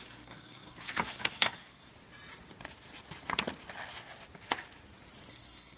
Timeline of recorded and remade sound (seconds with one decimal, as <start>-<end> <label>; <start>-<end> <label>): 0.0-1.9 remade; 1.9-5.3 recorded; 5.3-5.8 remade